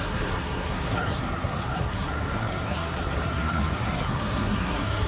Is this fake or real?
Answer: fake